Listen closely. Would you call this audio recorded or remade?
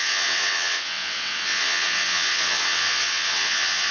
remade